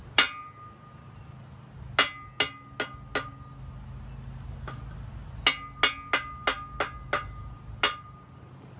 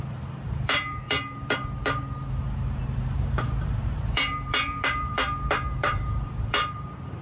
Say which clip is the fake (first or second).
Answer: second